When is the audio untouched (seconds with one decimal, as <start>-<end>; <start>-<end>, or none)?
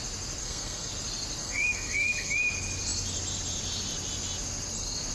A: 0.0-0.4; 0.9-1.4; 2.3-5.1